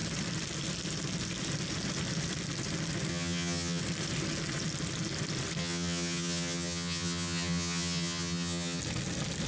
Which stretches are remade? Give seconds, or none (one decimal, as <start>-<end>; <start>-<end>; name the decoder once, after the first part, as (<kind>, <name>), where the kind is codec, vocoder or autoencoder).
3.1-3.8 (vocoder, HiFi-GAN); 5.6-8.8